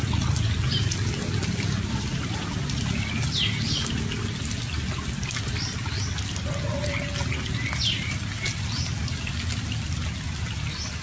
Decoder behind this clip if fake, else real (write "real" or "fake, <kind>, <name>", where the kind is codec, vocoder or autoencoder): real